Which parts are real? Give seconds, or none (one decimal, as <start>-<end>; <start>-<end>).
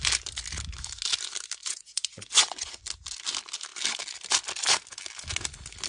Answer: 0.0-1.6; 2.8-5.9